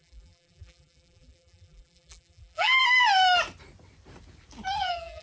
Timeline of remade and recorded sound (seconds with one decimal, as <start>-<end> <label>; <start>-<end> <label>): 0.0-2.8 remade; 2.8-4.8 recorded; 4.8-5.2 remade

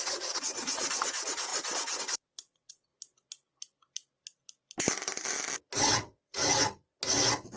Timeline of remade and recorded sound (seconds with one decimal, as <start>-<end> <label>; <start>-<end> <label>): 0.0-2.9 remade; 2.9-5.8 recorded; 5.8-6.4 remade; 6.4-7.6 recorded